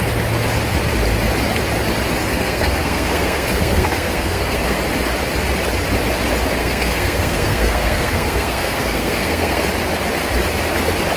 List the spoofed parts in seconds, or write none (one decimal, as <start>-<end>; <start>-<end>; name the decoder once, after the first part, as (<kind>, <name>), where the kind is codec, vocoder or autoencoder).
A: 2.3-4.8 (codec, SNAC); 6.6-9.7